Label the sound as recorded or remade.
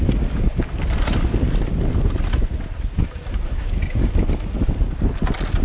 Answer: recorded